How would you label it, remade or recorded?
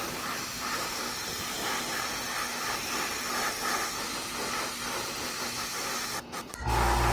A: recorded